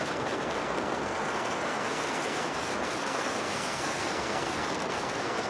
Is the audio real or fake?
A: fake